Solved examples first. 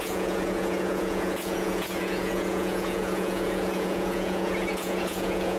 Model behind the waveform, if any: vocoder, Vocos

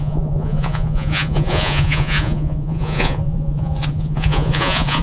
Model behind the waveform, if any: vocoder, Vocos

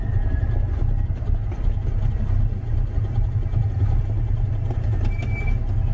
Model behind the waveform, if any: none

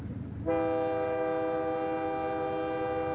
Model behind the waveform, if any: none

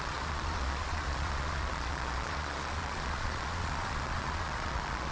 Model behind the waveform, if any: vocoder, Vocos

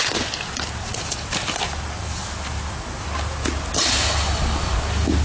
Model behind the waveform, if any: none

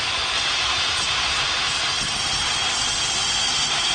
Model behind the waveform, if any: none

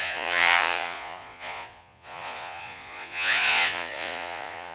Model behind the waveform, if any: vocoder, Vocos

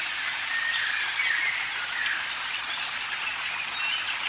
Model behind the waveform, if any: none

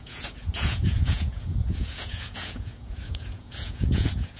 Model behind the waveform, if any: vocoder, Vocos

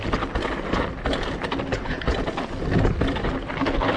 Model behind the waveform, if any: none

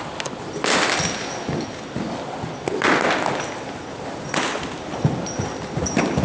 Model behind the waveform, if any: none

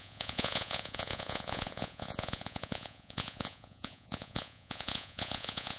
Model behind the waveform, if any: vocoder, Vocos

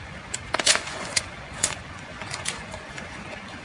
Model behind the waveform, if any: vocoder, Vocos